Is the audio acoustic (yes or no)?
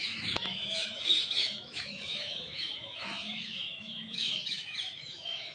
no